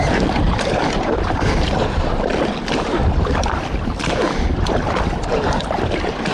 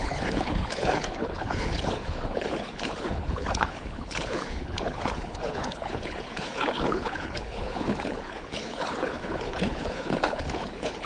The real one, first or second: first